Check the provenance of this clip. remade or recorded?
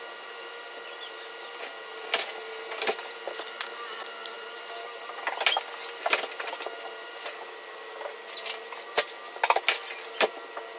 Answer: recorded